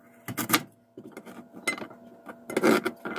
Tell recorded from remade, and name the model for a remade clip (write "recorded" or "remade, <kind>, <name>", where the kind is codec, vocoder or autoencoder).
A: recorded